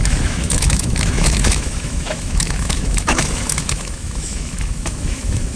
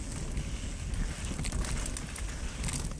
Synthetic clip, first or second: first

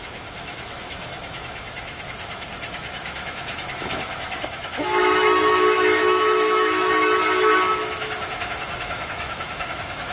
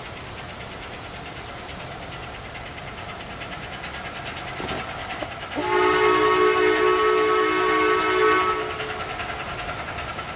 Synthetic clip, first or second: first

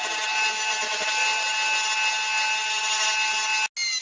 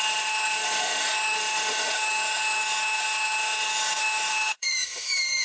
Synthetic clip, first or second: second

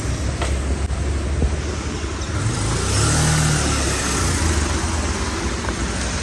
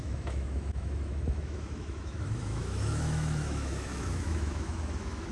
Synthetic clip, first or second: second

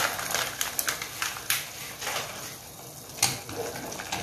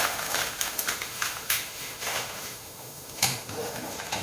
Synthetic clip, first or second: second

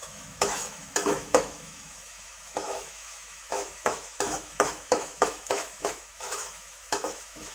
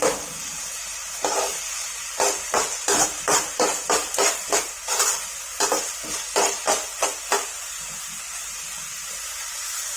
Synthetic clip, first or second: first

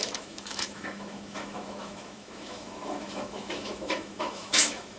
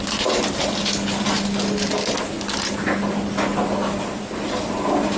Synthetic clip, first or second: first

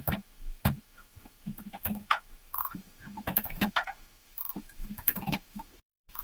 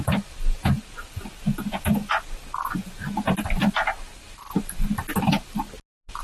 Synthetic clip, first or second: first